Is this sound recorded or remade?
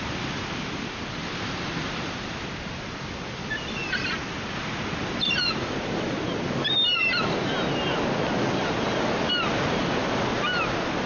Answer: recorded